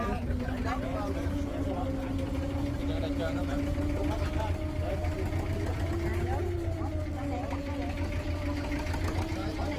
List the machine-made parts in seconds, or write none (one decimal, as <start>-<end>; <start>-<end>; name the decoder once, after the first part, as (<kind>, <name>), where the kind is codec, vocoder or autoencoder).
none